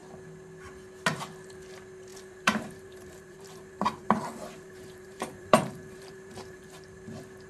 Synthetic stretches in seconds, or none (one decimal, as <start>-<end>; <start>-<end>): 2.1-6.6